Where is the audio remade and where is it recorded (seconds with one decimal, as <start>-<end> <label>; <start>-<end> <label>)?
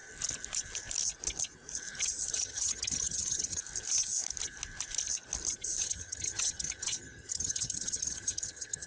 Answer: 0.0-2.3 recorded; 2.3-3.6 remade; 3.6-5.8 recorded; 5.8-8.9 remade